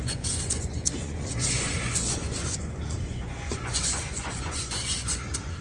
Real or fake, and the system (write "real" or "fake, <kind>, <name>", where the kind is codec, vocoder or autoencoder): fake, vocoder, Vocos